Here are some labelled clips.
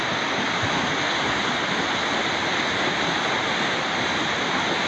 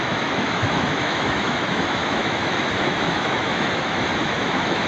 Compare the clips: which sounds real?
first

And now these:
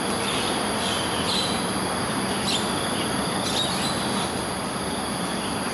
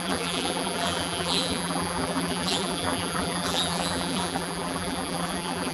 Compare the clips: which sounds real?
first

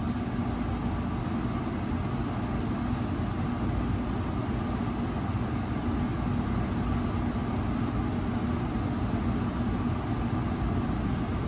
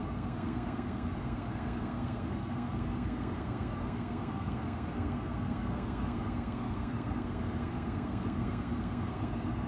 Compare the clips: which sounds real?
first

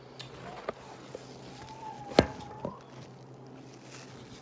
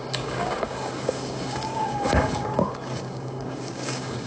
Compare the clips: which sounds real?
first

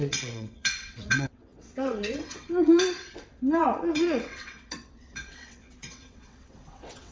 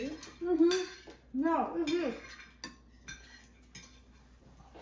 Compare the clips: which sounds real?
second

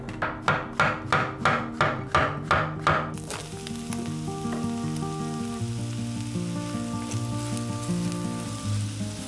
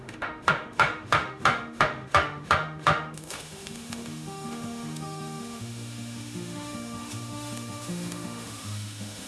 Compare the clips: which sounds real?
first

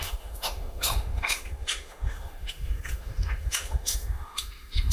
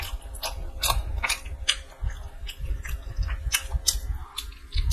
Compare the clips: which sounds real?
second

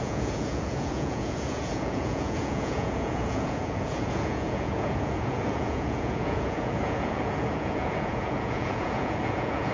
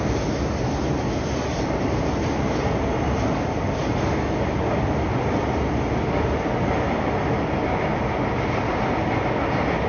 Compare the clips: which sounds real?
second